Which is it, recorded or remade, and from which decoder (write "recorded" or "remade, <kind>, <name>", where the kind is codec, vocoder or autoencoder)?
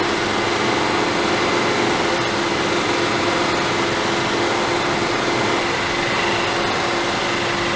recorded